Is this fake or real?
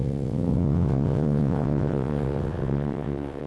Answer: fake